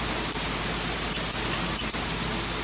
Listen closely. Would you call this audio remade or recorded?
recorded